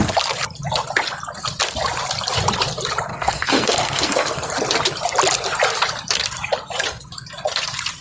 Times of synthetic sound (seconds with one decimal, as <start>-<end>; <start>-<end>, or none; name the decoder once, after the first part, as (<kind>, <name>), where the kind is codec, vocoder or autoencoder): 3.1-4.5 (codec, SNAC)